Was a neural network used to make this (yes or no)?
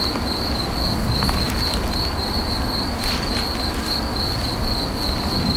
no